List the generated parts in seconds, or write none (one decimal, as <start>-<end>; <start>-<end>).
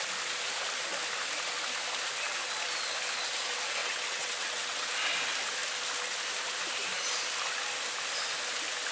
3.8-4.9